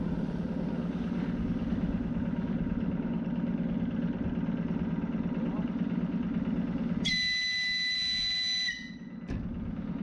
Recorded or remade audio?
recorded